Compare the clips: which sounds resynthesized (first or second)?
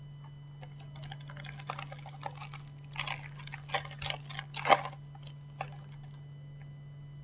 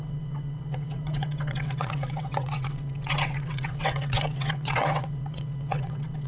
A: second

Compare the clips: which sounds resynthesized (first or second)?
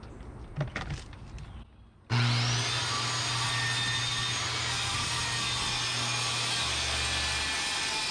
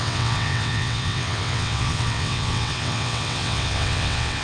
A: second